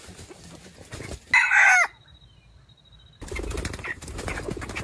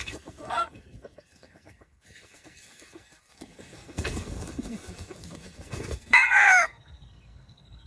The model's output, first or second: second